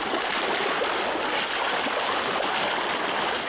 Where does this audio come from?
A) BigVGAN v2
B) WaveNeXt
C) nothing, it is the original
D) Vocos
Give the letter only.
C